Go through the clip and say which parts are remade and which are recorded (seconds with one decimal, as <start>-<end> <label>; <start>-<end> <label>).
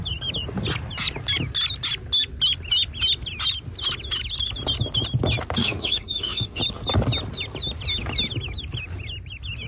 0.0-5.6 recorded; 5.6-6.6 remade; 6.6-9.7 recorded